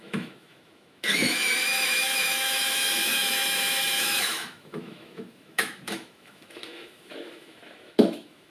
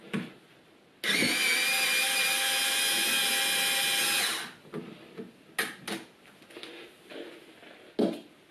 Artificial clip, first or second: first